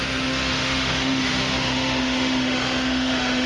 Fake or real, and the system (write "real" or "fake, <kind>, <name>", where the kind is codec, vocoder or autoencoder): fake, autoencoder, DAC-VAE